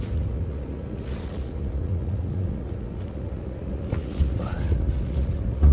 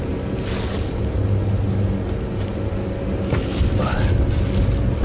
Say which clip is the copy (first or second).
first